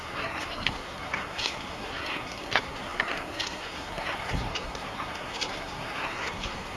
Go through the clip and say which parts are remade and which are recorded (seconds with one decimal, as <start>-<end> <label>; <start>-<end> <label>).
0.0-6.8 remade